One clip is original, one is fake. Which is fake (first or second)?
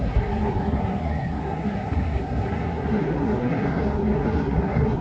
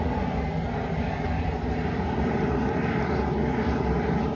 first